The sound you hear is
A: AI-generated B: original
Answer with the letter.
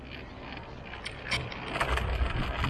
B